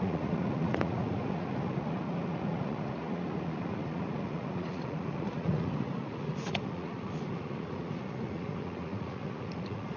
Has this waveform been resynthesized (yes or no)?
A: yes